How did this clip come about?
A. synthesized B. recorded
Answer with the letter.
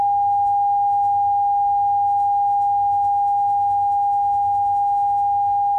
A